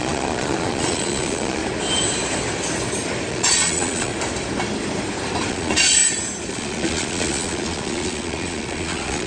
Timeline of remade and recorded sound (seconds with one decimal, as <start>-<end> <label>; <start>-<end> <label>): 0.0-1.6 remade; 1.6-3.3 recorded; 3.3-4.1 remade; 4.1-5.5 recorded; 5.5-6.0 remade; 6.0-6.5 recorded; 6.5-9.3 remade